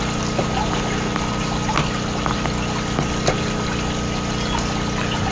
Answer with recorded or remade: recorded